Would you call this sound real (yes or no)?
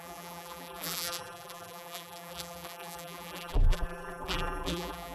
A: no